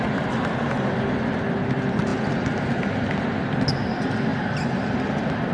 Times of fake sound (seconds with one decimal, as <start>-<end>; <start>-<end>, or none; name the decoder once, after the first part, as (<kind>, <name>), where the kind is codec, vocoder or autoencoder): 4.3-4.8 (vocoder, BigVGAN v2)